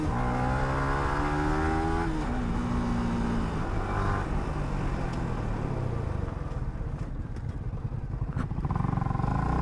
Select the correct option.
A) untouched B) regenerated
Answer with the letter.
A